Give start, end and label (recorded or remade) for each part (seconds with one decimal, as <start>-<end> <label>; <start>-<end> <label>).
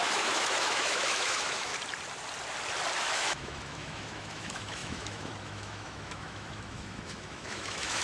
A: 0.0-1.7 remade; 1.7-3.0 recorded; 3.0-8.0 remade